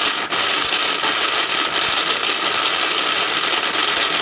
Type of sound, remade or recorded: recorded